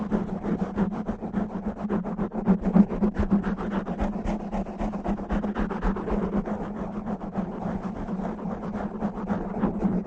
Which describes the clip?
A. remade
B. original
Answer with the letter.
B